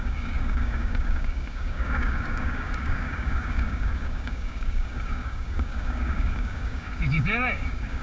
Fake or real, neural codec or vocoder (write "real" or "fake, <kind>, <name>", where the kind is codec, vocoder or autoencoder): fake, codec, DAC